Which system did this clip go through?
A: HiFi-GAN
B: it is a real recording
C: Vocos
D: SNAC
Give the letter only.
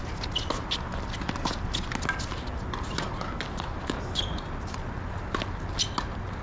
B